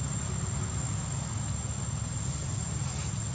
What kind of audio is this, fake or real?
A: real